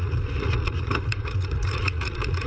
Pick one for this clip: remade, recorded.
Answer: remade